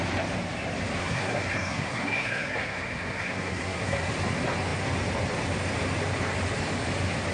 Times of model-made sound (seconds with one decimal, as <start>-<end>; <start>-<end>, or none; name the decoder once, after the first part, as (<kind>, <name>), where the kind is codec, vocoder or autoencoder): 1.0-4.1 (codec, SNAC)